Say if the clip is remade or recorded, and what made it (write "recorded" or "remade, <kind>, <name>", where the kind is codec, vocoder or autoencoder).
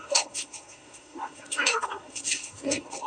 remade, codec, SNAC